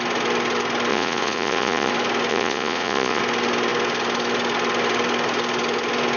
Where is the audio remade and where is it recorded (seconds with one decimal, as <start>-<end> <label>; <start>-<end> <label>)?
0.0-0.9 recorded; 0.9-1.9 remade; 1.9-2.3 recorded; 2.3-3.2 remade; 3.2-6.2 recorded